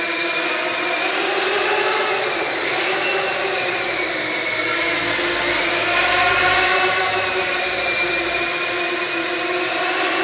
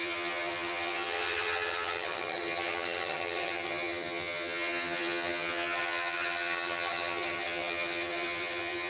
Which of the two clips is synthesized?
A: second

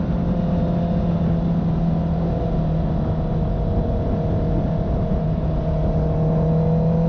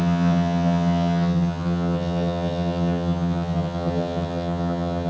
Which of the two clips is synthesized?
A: second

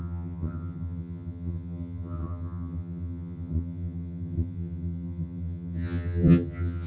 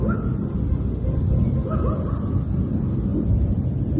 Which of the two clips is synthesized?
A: first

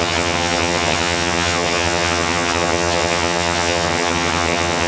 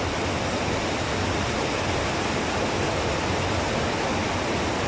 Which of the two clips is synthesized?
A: first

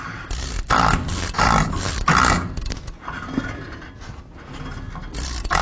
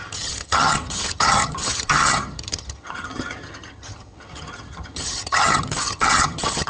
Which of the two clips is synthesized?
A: second